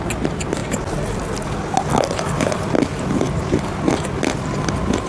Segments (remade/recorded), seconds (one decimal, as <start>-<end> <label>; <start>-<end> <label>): 0.0-5.1 recorded